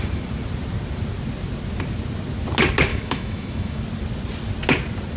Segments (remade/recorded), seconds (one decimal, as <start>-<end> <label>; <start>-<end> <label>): 0.0-2.9 recorded; 2.9-3.8 remade; 3.8-5.2 recorded